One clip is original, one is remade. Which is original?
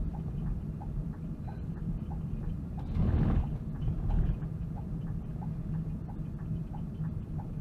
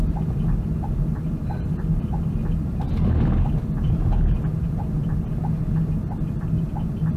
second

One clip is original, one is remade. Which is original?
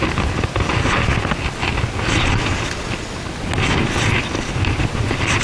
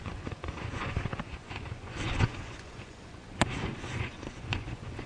first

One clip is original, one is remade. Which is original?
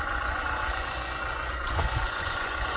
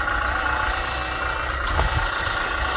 second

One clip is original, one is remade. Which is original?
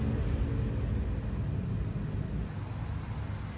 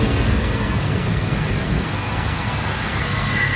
first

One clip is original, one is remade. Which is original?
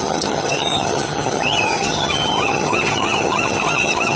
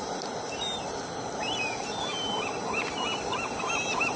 second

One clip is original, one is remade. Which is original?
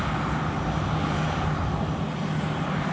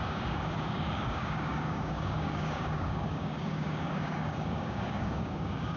first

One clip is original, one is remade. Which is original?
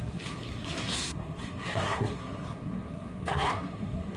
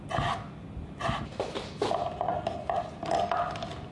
second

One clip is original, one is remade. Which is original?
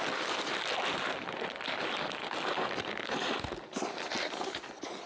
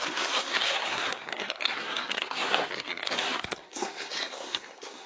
first